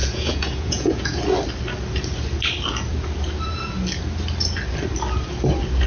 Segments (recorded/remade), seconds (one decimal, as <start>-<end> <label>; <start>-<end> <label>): 0.0-1.2 remade; 1.2-5.9 recorded